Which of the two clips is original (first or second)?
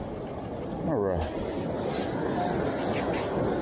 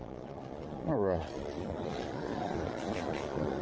first